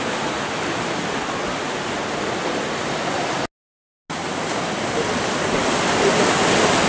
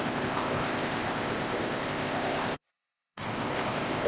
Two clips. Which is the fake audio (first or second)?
second